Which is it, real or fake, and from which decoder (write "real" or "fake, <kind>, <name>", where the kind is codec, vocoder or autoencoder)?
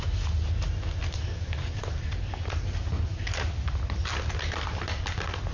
real